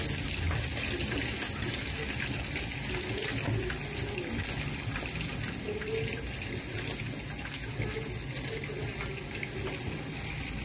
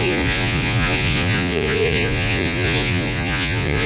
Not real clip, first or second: second